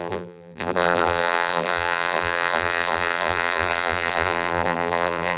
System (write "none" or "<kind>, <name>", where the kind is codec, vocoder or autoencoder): vocoder, BigVGAN v2